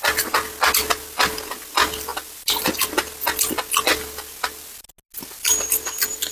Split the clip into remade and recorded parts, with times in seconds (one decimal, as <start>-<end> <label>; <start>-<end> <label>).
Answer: 0.0-6.3 recorded